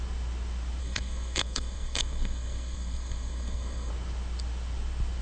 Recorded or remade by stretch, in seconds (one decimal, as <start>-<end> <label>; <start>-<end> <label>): 0.0-0.8 recorded; 0.8-3.9 remade; 3.9-5.2 recorded